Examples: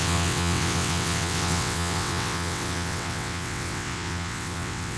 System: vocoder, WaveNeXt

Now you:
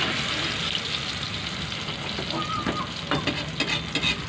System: none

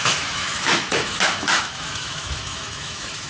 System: autoencoder, DAC-VAE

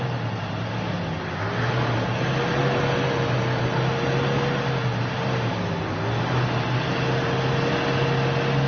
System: none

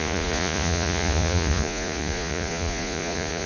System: vocoder, Vocos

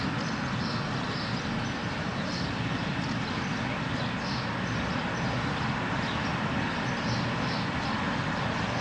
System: none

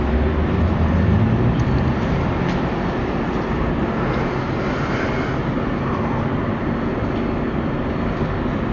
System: none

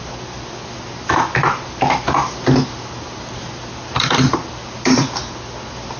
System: none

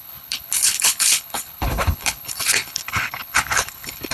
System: codec, HILCodec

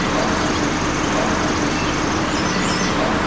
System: none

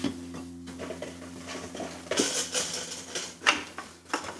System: none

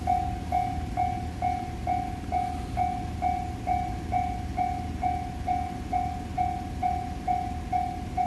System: none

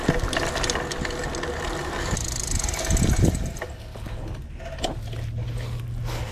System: none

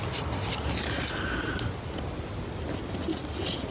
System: none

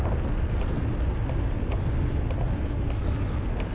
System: none